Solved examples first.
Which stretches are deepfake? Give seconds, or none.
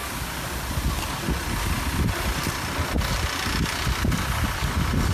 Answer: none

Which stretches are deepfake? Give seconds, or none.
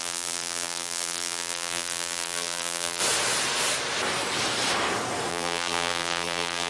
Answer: 0.0-3.0; 5.3-6.7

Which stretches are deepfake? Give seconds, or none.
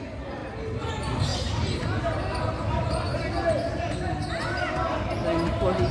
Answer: none